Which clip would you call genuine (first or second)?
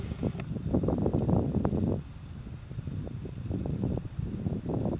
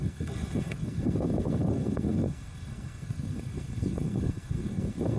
first